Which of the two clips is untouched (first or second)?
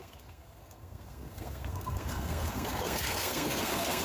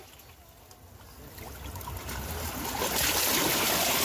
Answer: second